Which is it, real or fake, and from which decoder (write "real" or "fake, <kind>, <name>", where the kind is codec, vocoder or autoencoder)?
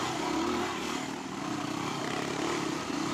real